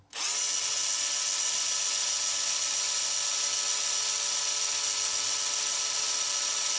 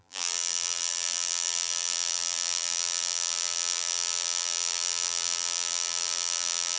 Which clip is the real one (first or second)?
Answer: first